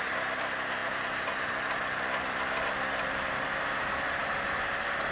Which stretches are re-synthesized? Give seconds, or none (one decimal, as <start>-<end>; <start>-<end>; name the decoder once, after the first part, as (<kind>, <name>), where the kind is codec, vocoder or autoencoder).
none